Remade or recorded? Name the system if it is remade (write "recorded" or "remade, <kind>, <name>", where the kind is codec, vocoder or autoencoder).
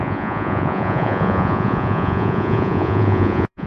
remade, vocoder, Vocos